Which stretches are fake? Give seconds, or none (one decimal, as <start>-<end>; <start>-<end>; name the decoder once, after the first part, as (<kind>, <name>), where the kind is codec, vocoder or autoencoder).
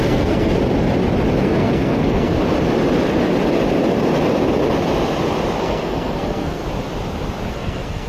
0.0-0.5 (codec, SNAC); 1.4-2.3; 5.6-6.6; 7.5-8.1